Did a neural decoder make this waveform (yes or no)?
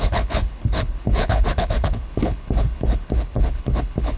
yes